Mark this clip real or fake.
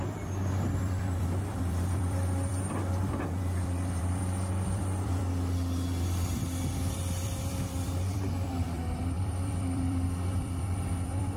fake